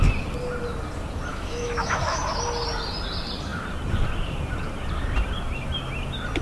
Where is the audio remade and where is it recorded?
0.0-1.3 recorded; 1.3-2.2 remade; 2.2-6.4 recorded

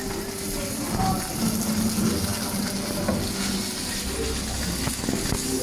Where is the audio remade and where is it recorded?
0.0-5.6 recorded

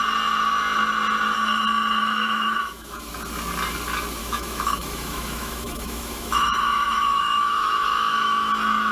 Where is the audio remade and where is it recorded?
0.0-2.0 recorded; 2.0-3.1 remade; 3.1-4.2 recorded; 4.2-8.5 remade; 8.5-8.9 recorded

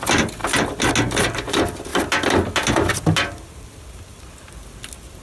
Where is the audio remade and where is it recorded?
0.0-5.2 recorded

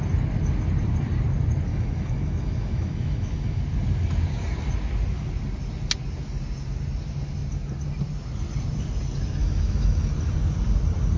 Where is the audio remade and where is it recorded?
0.0-1.7 recorded; 1.7-3.6 remade; 3.6-9.4 recorded; 9.4-10.1 remade; 10.1-11.2 recorded